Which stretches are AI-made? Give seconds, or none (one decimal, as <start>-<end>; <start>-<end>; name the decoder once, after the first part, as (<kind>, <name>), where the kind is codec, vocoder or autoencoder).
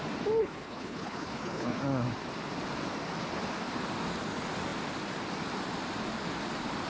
0.4-1.8 (codec, HILCodec)